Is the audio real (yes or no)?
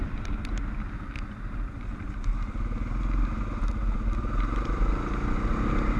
yes